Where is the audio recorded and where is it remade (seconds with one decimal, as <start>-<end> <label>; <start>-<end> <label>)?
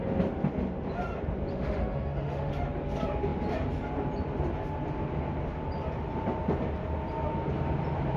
0.0-1.5 recorded; 1.5-2.5 remade; 2.5-8.2 recorded